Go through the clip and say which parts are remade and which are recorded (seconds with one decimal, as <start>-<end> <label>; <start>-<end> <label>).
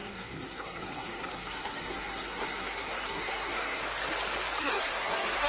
0.0-3.8 remade; 3.8-4.6 recorded; 4.6-5.5 remade